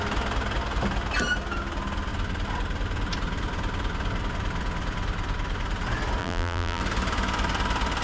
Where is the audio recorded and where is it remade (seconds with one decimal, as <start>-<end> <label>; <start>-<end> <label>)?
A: 0.0-6.2 recorded; 6.2-6.8 remade; 6.8-8.0 recorded

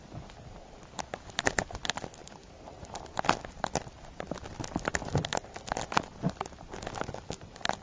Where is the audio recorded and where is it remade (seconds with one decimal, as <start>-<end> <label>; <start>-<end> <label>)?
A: 0.0-2.2 recorded; 2.2-3.1 remade; 3.1-7.8 recorded

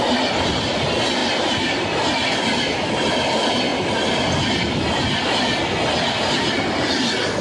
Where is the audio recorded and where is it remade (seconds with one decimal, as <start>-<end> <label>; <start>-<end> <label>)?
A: 0.0-1.2 recorded; 1.2-1.8 remade; 1.8-3.7 recorded; 3.7-4.9 remade; 4.9-7.4 recorded

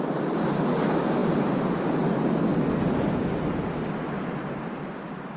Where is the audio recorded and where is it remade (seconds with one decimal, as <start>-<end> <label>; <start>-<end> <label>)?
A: 0.0-2.5 remade; 2.5-4.4 recorded; 4.4-5.4 remade

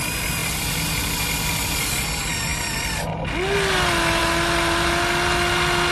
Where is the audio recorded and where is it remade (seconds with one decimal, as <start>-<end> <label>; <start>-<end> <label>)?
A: 0.0-5.9 recorded

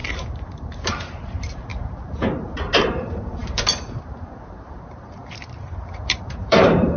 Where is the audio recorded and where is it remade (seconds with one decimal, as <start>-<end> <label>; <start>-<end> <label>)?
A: 0.0-1.7 remade; 1.7-2.8 recorded; 2.8-7.0 remade

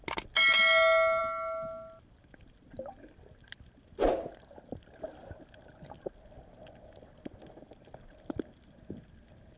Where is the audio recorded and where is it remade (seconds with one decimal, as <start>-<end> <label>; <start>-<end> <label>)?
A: 0.0-9.6 recorded